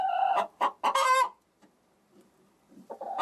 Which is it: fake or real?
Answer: real